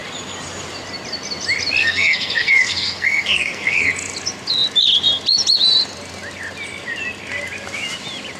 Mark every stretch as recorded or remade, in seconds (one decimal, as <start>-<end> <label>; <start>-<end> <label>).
0.0-1.8 recorded; 1.8-3.9 remade; 3.9-8.4 recorded